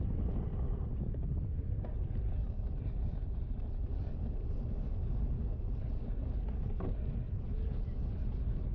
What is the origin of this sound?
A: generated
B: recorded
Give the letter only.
B